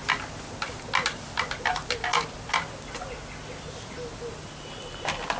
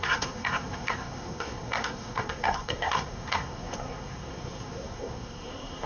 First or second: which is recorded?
first